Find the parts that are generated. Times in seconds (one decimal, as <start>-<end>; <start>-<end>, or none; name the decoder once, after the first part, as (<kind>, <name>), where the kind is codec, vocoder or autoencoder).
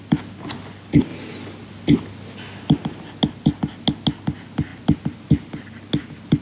none